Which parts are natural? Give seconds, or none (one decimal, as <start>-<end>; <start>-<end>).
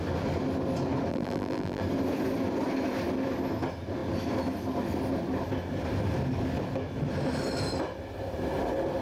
0.0-1.1; 1.8-9.0